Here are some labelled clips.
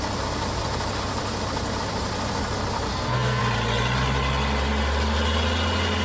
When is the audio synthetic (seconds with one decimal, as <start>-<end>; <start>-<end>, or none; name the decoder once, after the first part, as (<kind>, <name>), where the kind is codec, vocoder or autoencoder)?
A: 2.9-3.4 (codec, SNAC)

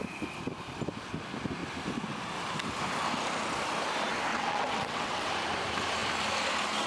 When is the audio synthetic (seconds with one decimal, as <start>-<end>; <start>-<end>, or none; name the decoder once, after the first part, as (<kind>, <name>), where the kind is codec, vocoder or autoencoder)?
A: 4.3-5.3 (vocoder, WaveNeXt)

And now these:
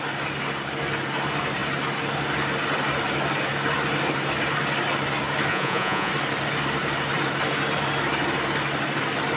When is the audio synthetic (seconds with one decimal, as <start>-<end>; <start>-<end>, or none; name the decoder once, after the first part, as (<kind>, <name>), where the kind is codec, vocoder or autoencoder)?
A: 5.5-6.1 (vocoder, Vocos)

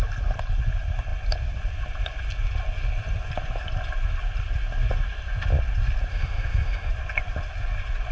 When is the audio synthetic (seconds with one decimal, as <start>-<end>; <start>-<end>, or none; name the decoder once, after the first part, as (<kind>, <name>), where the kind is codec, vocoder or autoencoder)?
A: 6.1-6.9 (autoencoder, DAC-VAE)

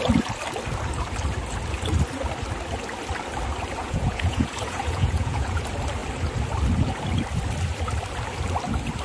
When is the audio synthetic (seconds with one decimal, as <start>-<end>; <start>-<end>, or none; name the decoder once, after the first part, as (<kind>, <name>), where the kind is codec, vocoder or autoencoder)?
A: 3.8-5.6 (vocoder, Vocos)

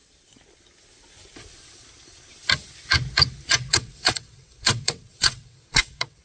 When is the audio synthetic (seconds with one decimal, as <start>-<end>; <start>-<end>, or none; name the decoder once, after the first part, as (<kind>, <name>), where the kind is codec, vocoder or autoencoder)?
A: 3.7-6.2 (vocoder, WaveNeXt)

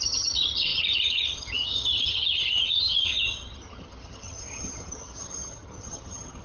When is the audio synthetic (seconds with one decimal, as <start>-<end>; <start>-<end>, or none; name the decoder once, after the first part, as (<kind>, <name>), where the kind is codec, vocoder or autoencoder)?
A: 0.0-6.4 (vocoder, HiFi-GAN)